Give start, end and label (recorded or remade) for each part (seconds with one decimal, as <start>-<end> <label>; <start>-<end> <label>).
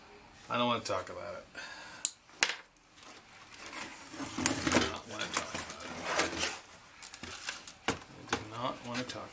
0.0-9.3 recorded